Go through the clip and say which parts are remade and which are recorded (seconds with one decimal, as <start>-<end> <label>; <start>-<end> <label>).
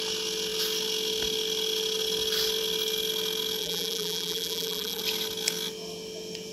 0.0-3.6 recorded; 3.6-5.0 remade; 5.0-6.5 recorded